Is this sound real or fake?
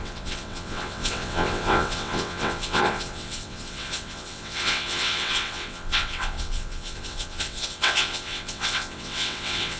fake